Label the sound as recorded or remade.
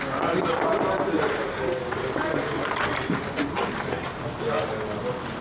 recorded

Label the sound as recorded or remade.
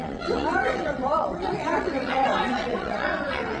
remade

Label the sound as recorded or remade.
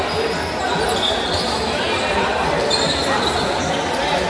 recorded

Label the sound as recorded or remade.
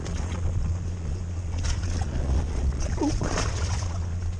remade